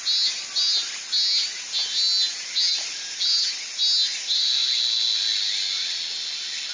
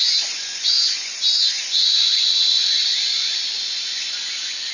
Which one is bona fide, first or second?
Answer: first